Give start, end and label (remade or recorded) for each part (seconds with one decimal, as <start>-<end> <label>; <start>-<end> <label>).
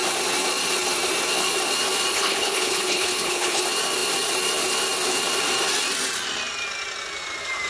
0.0-2.1 recorded; 2.1-3.6 remade; 3.6-7.7 recorded